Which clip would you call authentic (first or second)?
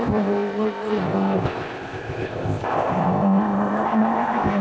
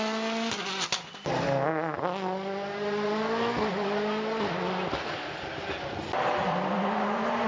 second